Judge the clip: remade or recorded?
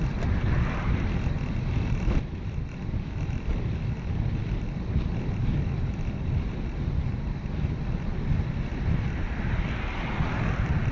recorded